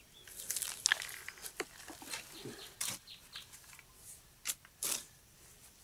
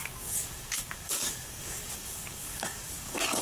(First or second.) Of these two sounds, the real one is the first